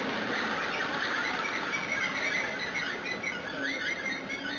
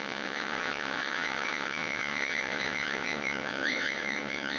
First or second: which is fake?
second